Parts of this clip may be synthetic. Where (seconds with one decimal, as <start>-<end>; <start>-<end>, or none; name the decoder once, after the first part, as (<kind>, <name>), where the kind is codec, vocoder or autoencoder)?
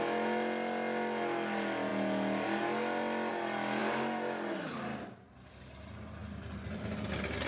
none